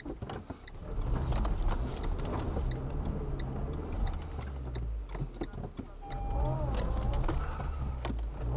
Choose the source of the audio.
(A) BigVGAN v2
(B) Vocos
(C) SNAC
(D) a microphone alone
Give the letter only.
D